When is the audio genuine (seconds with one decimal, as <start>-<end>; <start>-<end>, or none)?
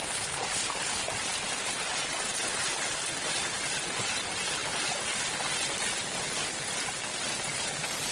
0.0-8.1